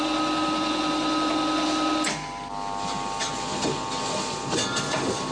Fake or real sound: real